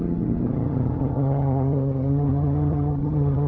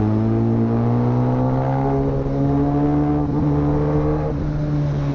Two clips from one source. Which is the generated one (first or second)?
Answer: first